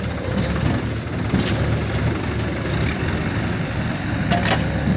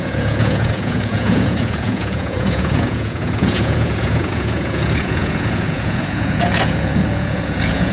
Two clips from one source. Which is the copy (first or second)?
second